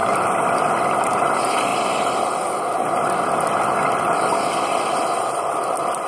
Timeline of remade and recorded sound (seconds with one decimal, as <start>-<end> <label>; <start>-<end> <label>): 0.0-1.1 remade; 1.1-6.1 recorded